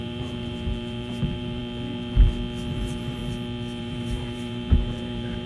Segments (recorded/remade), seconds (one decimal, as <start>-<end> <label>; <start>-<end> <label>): 0.0-1.6 remade; 1.6-2.7 recorded; 2.7-3.2 remade; 3.2-3.8 recorded; 3.8-5.5 remade